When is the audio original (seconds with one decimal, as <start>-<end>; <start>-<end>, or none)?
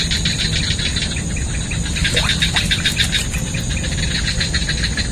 0.0-5.1